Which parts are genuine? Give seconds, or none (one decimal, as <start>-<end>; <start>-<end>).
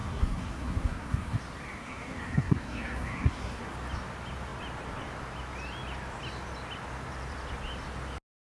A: 1.4-1.8; 3.7-8.5